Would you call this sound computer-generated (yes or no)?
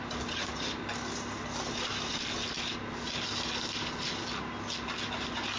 no